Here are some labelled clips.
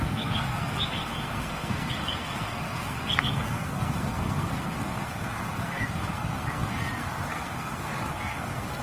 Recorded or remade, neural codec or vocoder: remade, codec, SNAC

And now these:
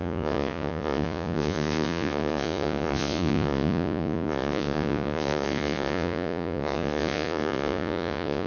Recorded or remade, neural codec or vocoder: remade, vocoder, Vocos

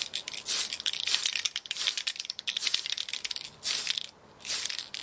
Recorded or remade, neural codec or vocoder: recorded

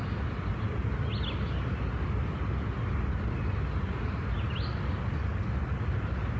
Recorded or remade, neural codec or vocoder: recorded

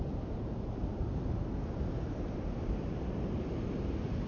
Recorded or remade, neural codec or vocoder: recorded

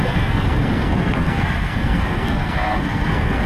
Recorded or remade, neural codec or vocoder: remade, codec, SNAC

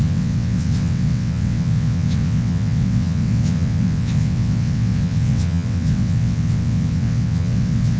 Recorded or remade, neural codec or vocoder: remade, vocoder, WaveNeXt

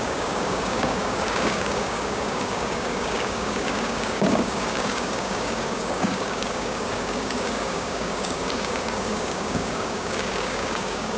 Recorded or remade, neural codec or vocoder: remade, codec, DAC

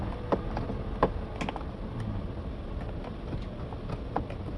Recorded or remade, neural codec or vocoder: recorded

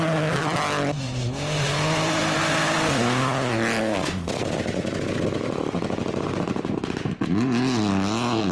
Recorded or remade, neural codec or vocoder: recorded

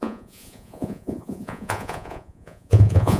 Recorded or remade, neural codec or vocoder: remade, vocoder, Vocos